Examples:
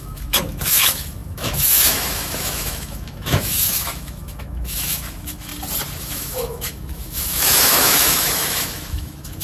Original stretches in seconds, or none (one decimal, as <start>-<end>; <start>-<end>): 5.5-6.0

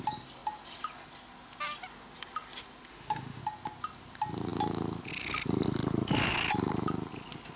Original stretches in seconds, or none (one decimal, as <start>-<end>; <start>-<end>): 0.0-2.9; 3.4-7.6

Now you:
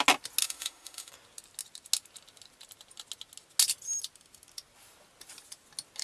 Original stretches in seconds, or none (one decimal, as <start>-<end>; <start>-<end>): 0.0-0.4; 1.1-6.0